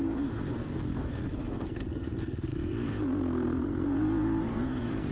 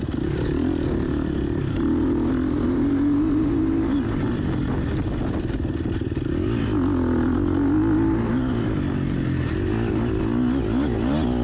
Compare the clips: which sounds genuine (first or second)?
second